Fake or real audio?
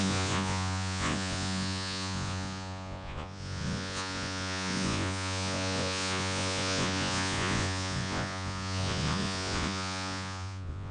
fake